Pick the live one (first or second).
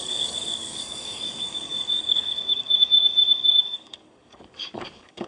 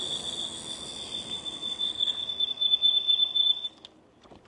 second